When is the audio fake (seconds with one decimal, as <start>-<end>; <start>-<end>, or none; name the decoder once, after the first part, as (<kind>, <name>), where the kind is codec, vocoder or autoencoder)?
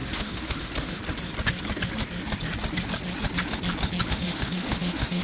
0.0-1.0 (autoencoder, DAC-VAE); 4.1-5.2